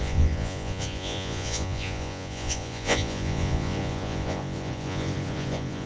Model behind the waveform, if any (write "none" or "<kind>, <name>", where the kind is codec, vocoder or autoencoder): vocoder, Vocos